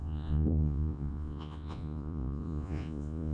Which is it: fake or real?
fake